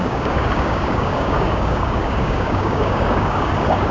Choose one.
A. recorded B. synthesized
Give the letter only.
B